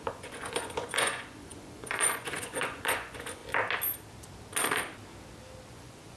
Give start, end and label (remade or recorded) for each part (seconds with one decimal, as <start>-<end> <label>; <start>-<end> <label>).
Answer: 0.0-3.4 remade; 3.4-5.7 recorded; 5.7-6.2 remade